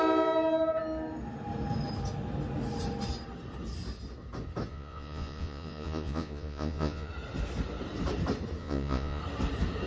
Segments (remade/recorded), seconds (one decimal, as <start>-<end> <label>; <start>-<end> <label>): 0.0-4.7 recorded; 4.7-7.1 remade; 7.1-8.6 recorded; 8.6-9.2 remade; 9.2-9.9 recorded